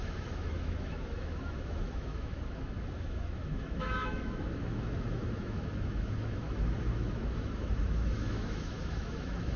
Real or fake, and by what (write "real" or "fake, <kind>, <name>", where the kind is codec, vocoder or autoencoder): fake, autoencoder, DAC-VAE